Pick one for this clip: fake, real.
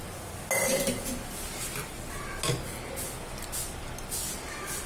real